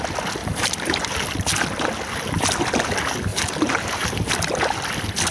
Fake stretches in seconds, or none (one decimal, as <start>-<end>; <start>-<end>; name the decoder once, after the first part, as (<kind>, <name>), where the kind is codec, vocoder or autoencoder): 0.4-1.0 (vocoder, BigVGAN v2); 3.3-4.5